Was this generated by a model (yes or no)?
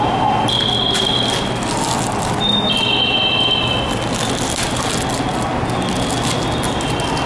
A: no